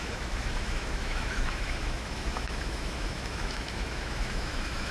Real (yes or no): no